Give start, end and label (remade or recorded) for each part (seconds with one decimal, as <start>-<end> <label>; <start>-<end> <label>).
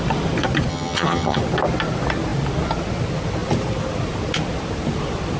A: 0.0-0.7 recorded; 0.7-1.4 remade; 1.4-5.4 recorded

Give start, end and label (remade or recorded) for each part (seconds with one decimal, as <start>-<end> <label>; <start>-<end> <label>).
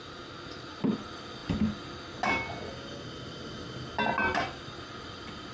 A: 0.0-5.5 recorded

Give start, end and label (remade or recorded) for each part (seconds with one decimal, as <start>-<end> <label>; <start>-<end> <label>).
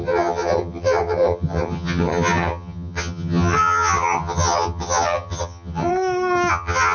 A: 0.0-5.9 remade; 5.9-6.5 recorded; 6.5-6.9 remade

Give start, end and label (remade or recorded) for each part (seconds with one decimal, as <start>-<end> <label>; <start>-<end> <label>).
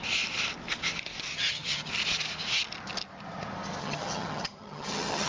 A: 0.0-1.3 recorded; 1.3-1.9 remade; 1.9-3.8 recorded; 3.8-5.3 remade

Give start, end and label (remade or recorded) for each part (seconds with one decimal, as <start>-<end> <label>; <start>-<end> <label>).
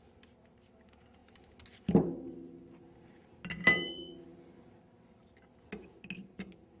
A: 0.0-6.8 recorded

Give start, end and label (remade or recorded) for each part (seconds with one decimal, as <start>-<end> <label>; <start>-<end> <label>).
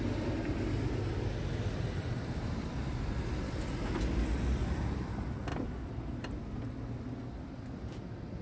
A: 0.0-8.4 recorded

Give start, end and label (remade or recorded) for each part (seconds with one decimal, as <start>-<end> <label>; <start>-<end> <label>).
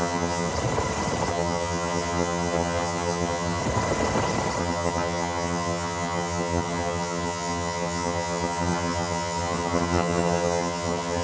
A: 0.0-0.5 remade; 0.5-1.3 recorded; 1.3-3.6 remade; 3.6-4.6 recorded; 4.6-11.2 remade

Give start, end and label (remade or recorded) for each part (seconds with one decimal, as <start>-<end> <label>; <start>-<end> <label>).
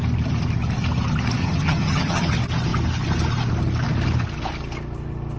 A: 0.0-1.4 recorded; 1.4-2.3 remade; 2.3-5.4 recorded